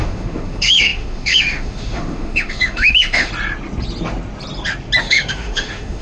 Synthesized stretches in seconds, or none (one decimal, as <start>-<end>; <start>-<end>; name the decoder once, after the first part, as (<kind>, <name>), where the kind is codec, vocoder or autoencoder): 0.0-3.3 (autoencoder, DAC-VAE); 5.0-6.0